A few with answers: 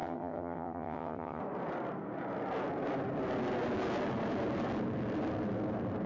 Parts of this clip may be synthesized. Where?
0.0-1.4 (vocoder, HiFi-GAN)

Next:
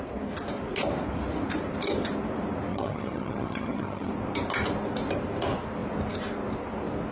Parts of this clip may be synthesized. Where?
2.7-4.1 (vocoder, HiFi-GAN)

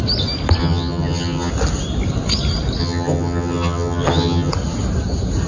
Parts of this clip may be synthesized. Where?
0.6-1.5 (vocoder, HiFi-GAN); 2.8-4.5

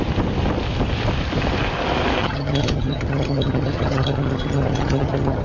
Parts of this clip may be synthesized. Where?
2.2-5.4 (vocoder, HiFi-GAN)

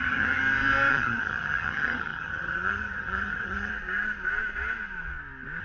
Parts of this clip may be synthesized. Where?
0.0-0.4 (vocoder, HiFi-GAN); 0.9-3.7